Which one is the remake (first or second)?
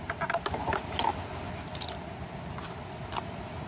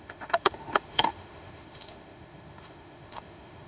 second